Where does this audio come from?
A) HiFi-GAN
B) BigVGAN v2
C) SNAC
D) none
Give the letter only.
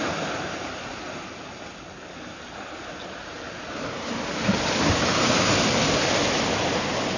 D